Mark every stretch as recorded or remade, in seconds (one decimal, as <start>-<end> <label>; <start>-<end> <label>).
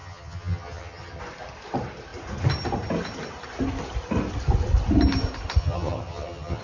0.0-1.2 remade; 1.2-5.6 recorded; 5.6-6.6 remade